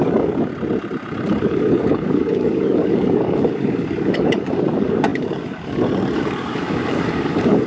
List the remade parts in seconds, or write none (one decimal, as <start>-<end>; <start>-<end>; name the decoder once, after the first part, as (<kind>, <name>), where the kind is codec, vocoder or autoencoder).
0.0-0.5 (codec, DAC); 1.4-7.7